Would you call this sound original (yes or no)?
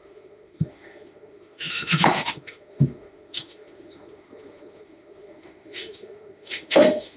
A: no